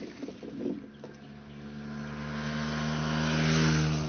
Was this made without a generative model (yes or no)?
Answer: yes